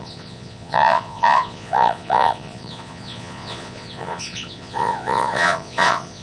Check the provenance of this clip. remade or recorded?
remade